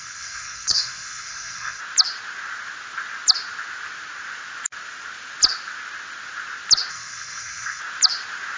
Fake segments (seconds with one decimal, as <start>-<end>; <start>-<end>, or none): 0.0-1.8; 6.9-7.8